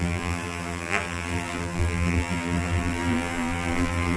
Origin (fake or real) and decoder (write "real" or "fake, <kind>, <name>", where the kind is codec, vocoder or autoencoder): fake, vocoder, BigVGAN v2